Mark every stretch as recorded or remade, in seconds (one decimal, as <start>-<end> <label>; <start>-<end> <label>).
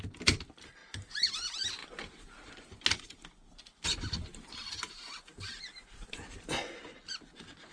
0.0-7.7 recorded